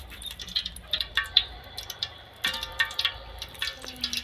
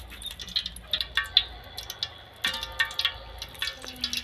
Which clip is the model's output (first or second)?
first